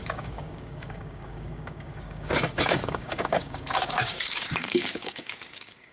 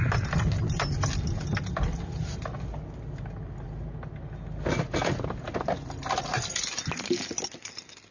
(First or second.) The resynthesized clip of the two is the first